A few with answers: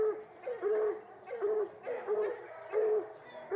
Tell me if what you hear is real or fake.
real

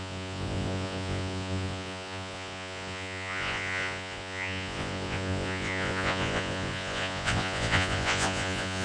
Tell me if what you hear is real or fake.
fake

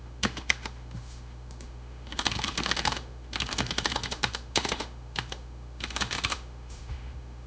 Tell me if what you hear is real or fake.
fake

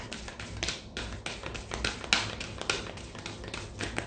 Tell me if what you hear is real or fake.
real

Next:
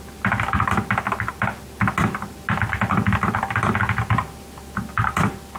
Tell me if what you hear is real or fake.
real